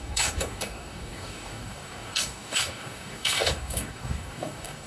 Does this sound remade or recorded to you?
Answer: remade